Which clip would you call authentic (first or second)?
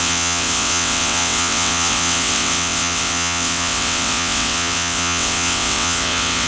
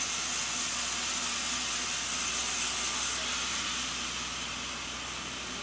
second